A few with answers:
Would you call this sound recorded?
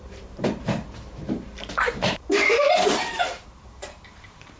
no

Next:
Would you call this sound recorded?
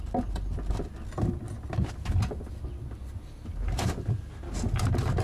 yes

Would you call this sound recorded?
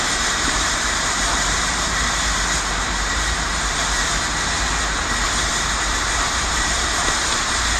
no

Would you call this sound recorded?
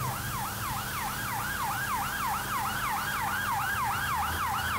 yes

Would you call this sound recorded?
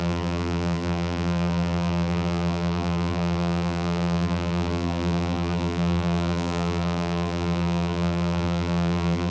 no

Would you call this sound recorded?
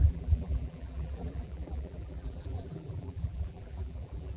no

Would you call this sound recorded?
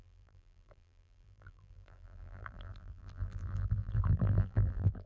no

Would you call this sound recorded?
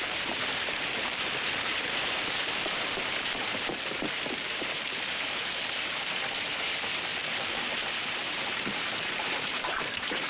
no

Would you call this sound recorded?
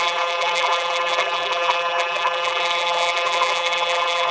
no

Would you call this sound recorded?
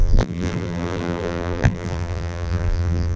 no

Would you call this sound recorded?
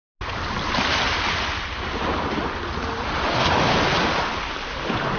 yes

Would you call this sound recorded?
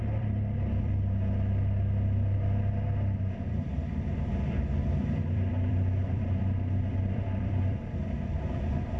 no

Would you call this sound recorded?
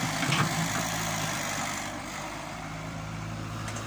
no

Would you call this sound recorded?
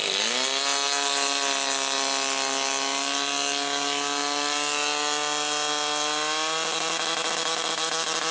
yes